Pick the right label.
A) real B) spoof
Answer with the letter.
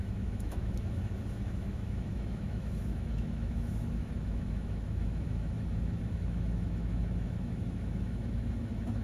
B